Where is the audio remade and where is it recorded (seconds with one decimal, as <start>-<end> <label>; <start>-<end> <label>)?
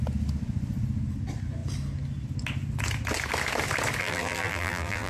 0.0-4.0 recorded; 4.0-5.1 remade